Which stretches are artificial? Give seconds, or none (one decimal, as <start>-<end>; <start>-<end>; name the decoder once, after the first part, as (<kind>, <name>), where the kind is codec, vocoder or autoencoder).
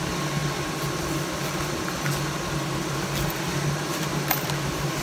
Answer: 3.9-5.0 (vocoder, BigVGAN v2)